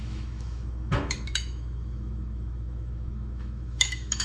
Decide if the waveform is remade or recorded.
remade